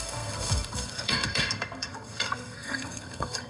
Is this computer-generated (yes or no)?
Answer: yes